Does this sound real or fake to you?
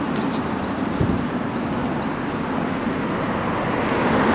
real